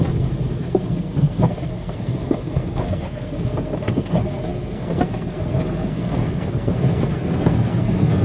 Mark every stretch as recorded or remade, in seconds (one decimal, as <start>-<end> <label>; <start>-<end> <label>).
0.0-8.2 remade